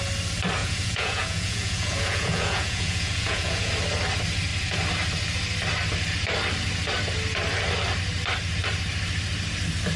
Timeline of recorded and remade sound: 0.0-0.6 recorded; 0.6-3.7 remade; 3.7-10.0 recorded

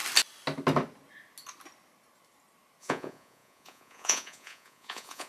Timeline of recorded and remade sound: 0.0-2.8 recorded; 2.8-5.3 remade